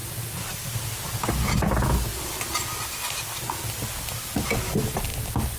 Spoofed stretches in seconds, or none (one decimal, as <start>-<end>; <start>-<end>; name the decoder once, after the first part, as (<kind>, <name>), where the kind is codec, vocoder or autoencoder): 0.0-0.6 (vocoder, BigVGAN v2); 5.1-5.6